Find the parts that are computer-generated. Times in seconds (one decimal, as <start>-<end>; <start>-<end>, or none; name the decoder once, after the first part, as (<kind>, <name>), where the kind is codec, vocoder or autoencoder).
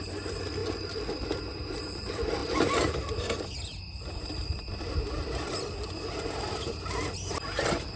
none